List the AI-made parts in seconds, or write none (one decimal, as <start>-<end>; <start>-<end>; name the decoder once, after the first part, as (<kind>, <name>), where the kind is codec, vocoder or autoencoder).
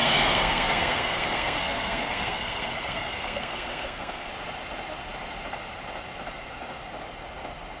0.0-4.3 (codec, SNAC)